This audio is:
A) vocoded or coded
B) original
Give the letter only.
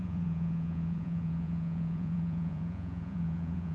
A